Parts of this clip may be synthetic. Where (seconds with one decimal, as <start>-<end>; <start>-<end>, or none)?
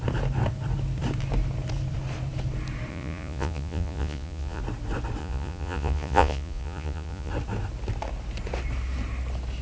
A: 2.9-4.6; 5.2-7.3